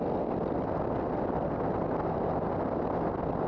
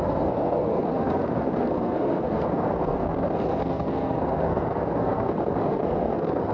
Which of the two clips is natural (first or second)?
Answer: first